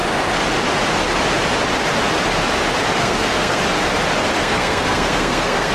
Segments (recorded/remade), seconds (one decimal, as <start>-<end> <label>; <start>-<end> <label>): 0.0-3.0 recorded; 3.0-3.6 remade; 3.6-4.4 recorded; 4.4-5.7 remade